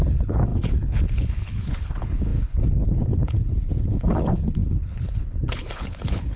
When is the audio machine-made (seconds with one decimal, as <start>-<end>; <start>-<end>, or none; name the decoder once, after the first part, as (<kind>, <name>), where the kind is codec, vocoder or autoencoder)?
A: 0.0-6.4 (codec, HILCodec)